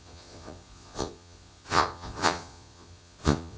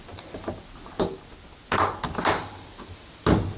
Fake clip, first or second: first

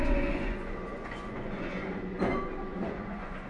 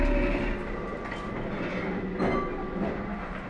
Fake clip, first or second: first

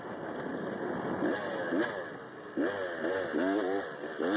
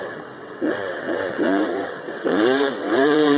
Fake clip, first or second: second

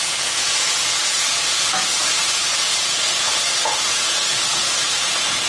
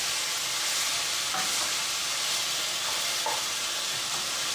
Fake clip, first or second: first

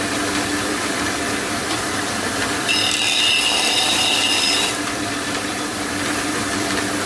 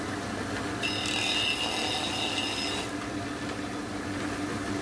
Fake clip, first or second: first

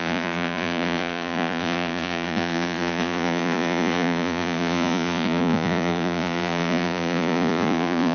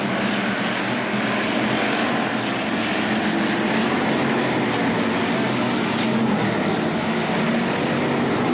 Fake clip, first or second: first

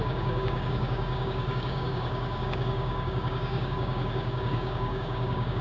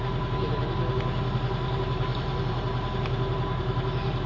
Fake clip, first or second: first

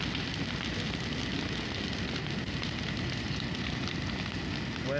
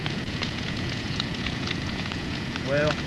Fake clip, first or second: second